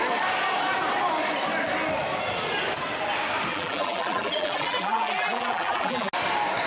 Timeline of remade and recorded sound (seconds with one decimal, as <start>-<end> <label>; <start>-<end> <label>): 0.0-3.5 recorded; 3.5-6.1 remade; 6.1-6.7 recorded